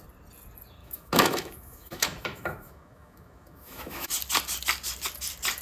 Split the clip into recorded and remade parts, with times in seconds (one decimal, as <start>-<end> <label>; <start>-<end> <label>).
0.0-0.8 recorded; 0.8-4.1 remade; 4.1-5.6 recorded